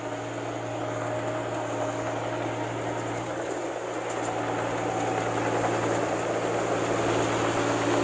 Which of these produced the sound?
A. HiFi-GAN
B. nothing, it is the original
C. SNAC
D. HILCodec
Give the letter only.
B